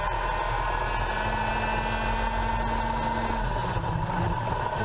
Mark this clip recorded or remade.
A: recorded